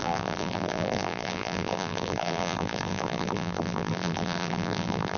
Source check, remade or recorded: remade